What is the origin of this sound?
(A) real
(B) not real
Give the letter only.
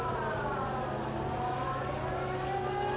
A